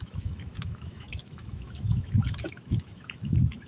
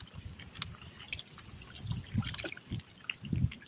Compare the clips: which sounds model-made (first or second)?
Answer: first